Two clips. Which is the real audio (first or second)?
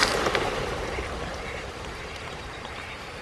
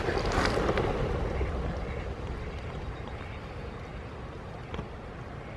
second